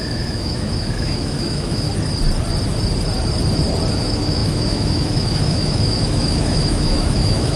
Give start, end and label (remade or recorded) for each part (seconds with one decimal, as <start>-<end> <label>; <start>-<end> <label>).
0.0-1.9 remade; 1.9-3.9 recorded; 3.9-7.6 remade

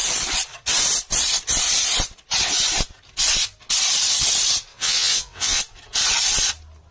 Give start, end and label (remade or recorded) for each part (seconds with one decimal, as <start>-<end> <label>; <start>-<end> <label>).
0.0-4.7 recorded; 4.7-5.6 remade; 5.6-6.9 recorded

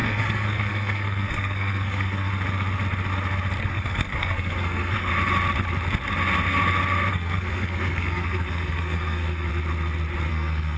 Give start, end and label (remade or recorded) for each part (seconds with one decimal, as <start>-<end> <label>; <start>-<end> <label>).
0.0-2.3 remade; 2.3-3.6 recorded; 3.6-5.1 remade; 5.1-7.1 recorded; 7.1-9.5 remade; 9.5-10.3 recorded; 10.3-10.8 remade

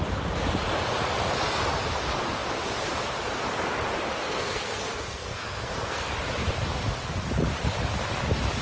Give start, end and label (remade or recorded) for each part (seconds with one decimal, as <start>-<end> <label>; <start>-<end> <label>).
0.0-4.2 recorded; 4.2-6.1 remade; 6.1-8.6 recorded

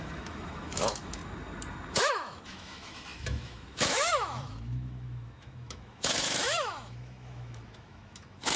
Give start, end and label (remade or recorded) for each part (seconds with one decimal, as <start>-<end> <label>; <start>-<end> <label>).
0.0-1.2 remade; 1.2-1.9 recorded; 1.9-8.6 remade